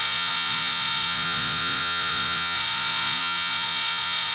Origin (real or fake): fake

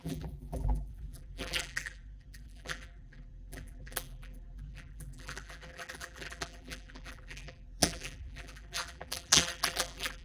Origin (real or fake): fake